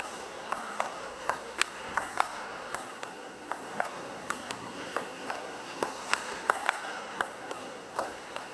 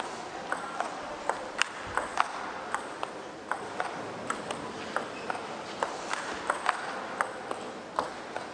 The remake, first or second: first